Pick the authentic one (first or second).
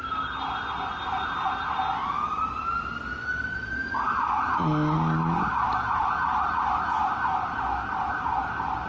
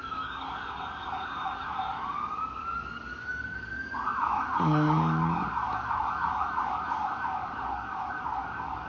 first